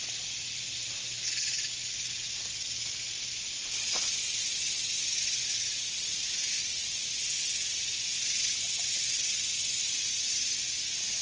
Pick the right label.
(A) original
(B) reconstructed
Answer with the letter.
A